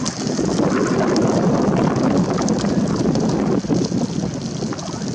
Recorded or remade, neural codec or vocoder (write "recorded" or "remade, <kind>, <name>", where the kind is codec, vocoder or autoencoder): recorded